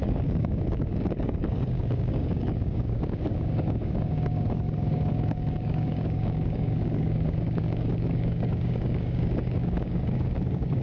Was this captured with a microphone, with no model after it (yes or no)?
no